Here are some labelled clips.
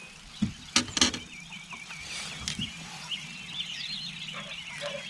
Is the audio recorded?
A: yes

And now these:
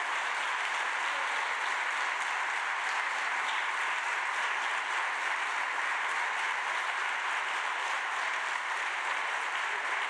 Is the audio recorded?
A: yes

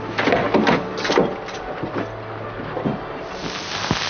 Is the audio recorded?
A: yes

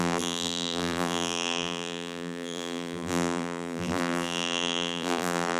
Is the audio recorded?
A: no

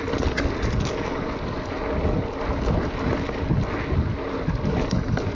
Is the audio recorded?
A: yes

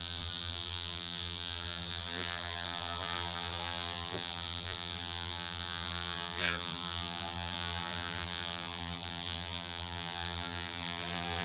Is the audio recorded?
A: no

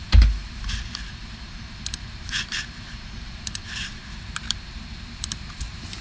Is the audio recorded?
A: no